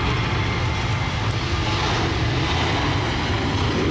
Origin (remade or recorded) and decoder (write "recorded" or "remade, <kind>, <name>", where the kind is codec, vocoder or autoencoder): recorded